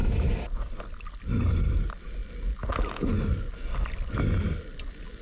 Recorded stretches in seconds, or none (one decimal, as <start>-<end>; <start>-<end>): 0.0-5.2